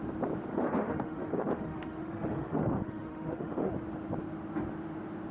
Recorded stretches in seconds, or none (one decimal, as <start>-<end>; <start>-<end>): 0.0-0.5; 3.7-5.3